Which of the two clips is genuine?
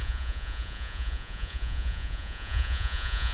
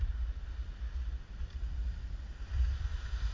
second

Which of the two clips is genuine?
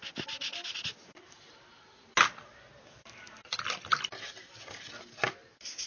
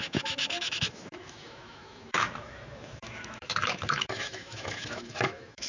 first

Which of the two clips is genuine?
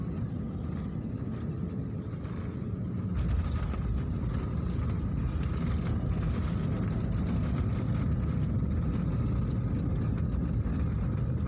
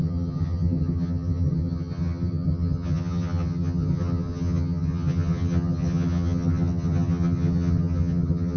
first